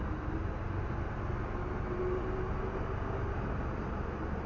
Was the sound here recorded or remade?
recorded